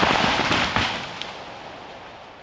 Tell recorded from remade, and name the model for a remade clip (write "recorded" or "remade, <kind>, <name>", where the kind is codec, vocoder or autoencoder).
recorded